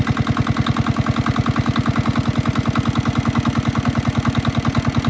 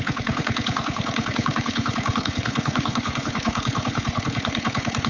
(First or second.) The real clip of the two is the first